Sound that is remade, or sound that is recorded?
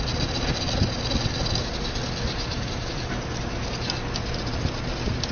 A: recorded